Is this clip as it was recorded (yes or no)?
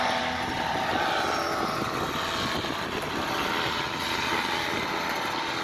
yes